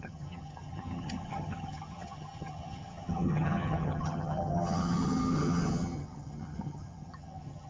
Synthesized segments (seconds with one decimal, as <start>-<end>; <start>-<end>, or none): 0.0-7.7

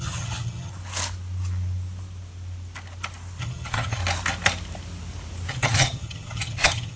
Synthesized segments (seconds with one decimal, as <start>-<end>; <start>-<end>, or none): 0.0-0.7; 3.4-4.0; 5.5-7.0

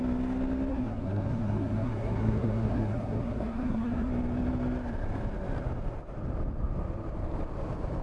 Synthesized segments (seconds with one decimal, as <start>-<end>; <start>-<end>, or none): 0.7-4.1

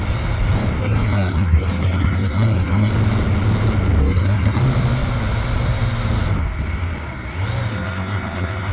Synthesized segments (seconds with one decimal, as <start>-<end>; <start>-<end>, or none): 0.8-2.9; 4.0-4.6; 7.7-8.7

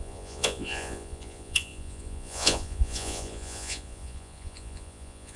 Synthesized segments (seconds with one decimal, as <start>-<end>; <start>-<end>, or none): 0.0-5.4

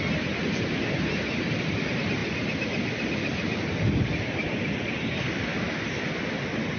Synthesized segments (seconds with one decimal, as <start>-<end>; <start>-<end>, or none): 2.2-6.3